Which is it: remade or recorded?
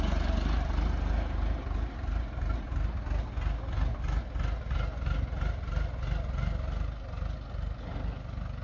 recorded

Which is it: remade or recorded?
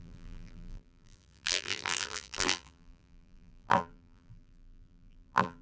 remade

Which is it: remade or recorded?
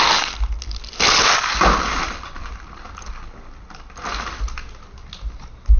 recorded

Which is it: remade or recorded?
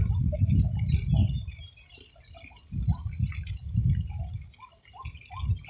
recorded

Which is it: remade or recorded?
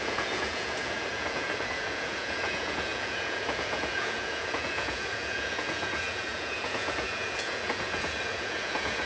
remade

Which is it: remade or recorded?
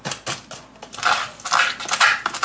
recorded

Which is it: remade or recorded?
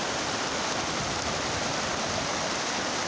recorded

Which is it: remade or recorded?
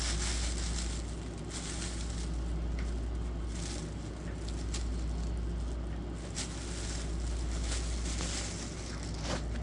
recorded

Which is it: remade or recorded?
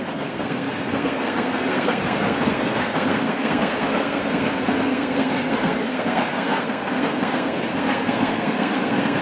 remade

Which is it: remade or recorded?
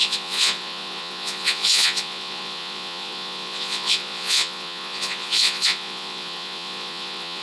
remade